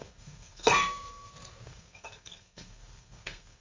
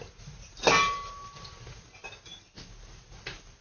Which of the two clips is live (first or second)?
second